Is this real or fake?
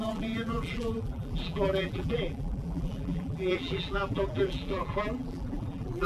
fake